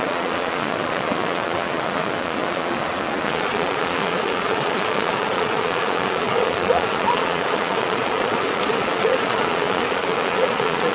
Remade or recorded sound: remade